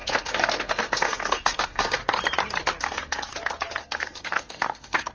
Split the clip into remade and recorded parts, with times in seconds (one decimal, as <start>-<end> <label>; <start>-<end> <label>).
0.0-2.0 remade; 2.0-2.8 recorded; 2.8-3.3 remade; 3.3-3.8 recorded; 3.8-5.1 remade